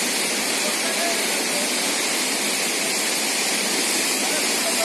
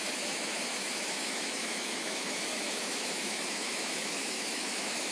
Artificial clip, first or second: second